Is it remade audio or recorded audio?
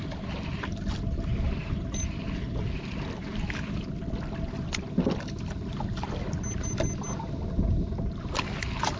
recorded